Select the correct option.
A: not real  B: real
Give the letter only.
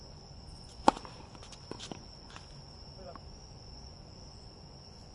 A